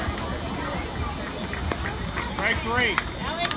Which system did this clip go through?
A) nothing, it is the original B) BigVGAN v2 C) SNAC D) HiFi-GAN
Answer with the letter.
A